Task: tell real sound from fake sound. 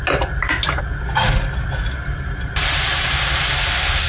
real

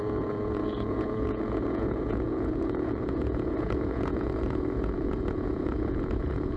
fake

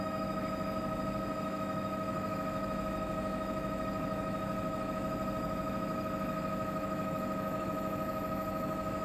fake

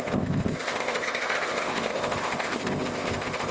fake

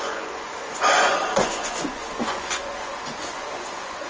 fake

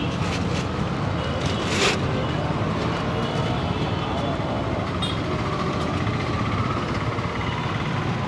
real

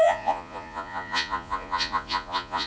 fake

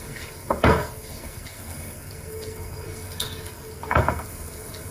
fake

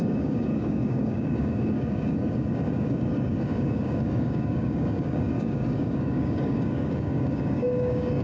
fake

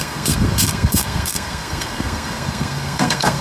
fake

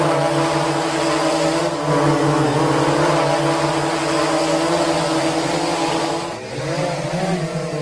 real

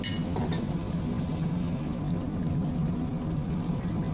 real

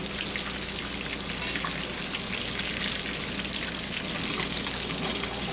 real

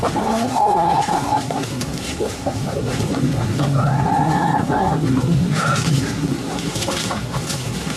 fake